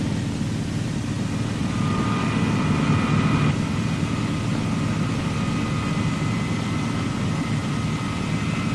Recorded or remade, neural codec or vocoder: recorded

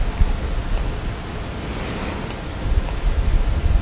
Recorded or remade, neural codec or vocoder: recorded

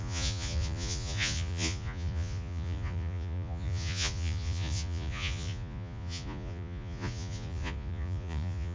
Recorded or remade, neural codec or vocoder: remade, vocoder, Vocos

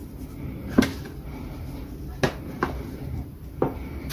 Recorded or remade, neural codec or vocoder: recorded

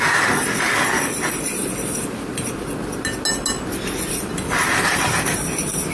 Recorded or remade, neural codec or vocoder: recorded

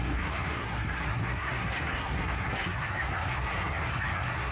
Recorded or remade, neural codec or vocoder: remade, codec, SNAC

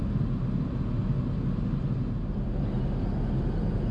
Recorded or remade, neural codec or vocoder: recorded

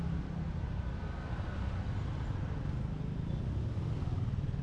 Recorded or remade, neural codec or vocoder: recorded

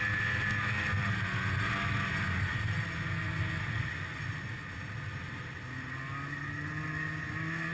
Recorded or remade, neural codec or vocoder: recorded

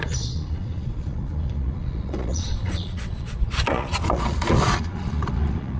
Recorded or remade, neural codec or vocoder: remade, vocoder, Vocos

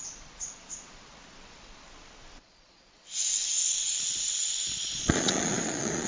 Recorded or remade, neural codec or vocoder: remade, vocoder, Vocos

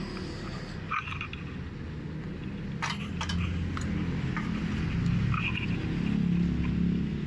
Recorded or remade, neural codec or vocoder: recorded